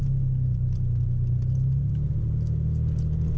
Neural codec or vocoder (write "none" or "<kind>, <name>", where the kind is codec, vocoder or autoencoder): none